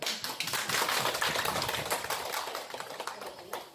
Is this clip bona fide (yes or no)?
yes